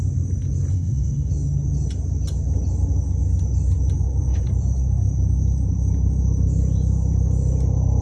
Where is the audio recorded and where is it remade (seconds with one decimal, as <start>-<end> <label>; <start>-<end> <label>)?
0.0-0.7 recorded; 0.7-1.3 remade; 1.3-8.0 recorded